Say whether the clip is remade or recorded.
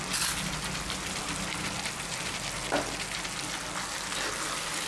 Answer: recorded